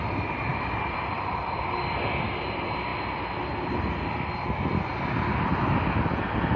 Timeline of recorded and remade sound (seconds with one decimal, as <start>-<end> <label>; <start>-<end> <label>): 0.0-0.5 recorded; 0.5-1.3 remade; 1.3-6.6 recorded